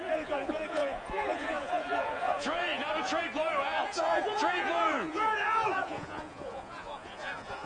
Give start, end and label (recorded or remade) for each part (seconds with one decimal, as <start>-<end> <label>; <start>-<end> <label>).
0.0-7.7 remade